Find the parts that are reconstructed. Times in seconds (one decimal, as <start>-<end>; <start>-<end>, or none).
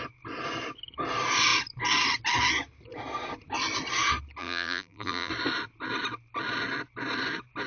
4.4-5.3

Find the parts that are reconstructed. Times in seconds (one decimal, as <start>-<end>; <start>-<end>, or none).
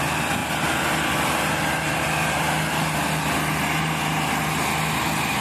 none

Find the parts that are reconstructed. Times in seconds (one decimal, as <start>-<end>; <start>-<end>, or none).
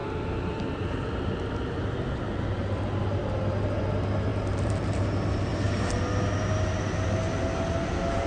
4.3-5.1; 5.5-6.0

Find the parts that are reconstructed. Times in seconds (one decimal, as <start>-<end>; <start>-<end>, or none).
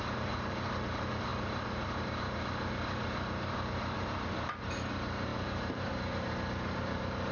0.0-7.3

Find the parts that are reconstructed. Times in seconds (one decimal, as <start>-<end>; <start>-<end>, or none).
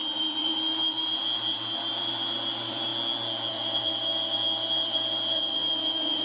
0.0-2.9; 3.5-6.2